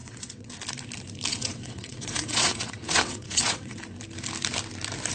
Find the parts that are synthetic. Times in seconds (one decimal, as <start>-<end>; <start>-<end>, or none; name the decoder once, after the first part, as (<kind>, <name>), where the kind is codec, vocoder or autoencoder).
0.0-0.5 (vocoder, WaveNeXt); 1.3-3.8